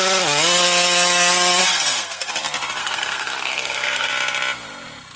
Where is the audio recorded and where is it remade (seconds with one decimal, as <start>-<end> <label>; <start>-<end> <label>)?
0.0-1.6 recorded; 1.6-2.3 remade; 2.3-2.8 recorded; 2.8-4.1 remade; 4.1-5.2 recorded

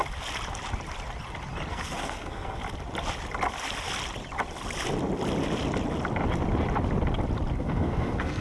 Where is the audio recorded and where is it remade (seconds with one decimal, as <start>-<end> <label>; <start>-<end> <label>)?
0.0-1.7 recorded; 1.7-2.6 remade; 2.6-7.6 recorded; 7.6-8.4 remade

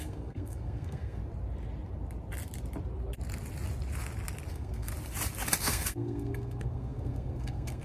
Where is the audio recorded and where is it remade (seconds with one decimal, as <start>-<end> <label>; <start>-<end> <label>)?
0.0-1.2 remade; 1.2-4.5 recorded; 4.5-4.9 remade; 4.9-5.6 recorded; 5.6-7.8 remade

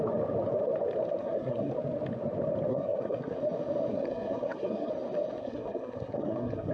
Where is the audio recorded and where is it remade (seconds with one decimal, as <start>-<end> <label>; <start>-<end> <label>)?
0.0-1.2 recorded; 1.2-1.7 remade; 1.7-2.7 recorded; 2.7-3.4 remade; 3.4-3.9 recorded; 3.9-4.9 remade; 4.9-5.4 recorded; 5.4-6.7 remade

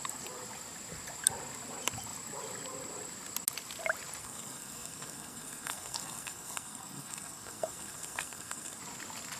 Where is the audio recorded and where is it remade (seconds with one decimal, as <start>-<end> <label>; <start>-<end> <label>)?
0.0-4.2 recorded; 4.2-8.8 remade; 8.8-9.4 recorded

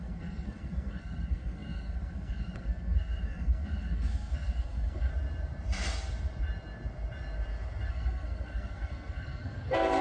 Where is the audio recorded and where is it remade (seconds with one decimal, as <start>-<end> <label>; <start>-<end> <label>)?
0.0-5.1 remade; 5.1-7.9 recorded; 7.9-10.0 remade

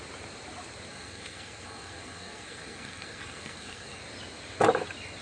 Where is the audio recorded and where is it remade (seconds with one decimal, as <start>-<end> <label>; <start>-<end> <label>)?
0.0-0.9 recorded; 0.9-4.0 remade; 4.0-5.2 recorded